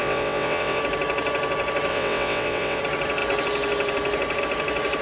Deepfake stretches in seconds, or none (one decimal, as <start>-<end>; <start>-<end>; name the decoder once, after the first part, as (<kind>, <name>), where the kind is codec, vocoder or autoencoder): 0.0-0.8 (vocoder, WaveNeXt); 1.9-2.8